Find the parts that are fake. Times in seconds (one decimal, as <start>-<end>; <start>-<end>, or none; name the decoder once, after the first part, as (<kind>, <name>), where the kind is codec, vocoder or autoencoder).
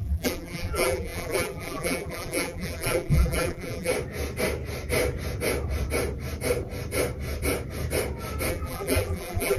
0.0-3.9 (vocoder, BigVGAN v2); 8.5-9.6